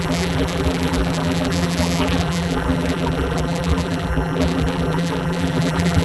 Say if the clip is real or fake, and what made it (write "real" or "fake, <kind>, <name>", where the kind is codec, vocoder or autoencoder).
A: fake, vocoder, BigVGAN v2